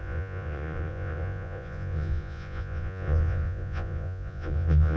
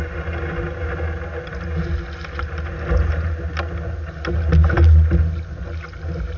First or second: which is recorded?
second